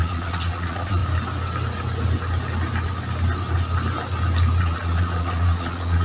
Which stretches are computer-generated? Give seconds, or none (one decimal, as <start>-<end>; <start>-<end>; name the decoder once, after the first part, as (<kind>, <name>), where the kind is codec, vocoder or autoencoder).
0.0-1.0 (vocoder, Vocos); 4.6-6.0